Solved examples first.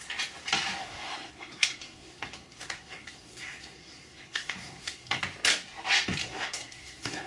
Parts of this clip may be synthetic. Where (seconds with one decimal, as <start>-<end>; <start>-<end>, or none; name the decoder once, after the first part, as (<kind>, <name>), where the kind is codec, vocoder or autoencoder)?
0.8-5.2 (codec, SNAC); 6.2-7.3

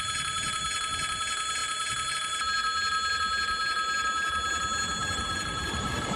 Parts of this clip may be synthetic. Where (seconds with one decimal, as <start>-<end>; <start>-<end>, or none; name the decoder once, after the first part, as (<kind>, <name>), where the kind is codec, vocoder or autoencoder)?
5.0-6.2 (vocoder, BigVGAN v2)

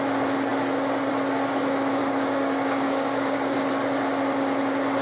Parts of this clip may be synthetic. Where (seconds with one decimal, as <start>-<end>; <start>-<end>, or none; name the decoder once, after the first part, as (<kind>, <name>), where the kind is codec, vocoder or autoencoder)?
2.0-3.7 (codec, DAC)